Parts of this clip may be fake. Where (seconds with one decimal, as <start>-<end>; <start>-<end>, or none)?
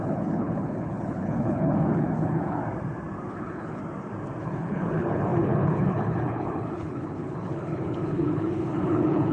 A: 0.0-2.6; 3.3-3.8; 4.4-9.3